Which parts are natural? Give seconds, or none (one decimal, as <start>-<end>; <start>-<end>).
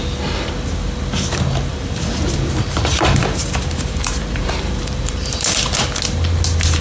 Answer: 0.0-1.7; 5.8-6.8